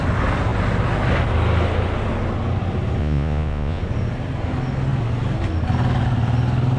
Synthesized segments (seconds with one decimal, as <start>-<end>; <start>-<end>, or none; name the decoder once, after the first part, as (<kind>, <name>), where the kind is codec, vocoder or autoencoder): 3.0-3.8 (vocoder, Vocos)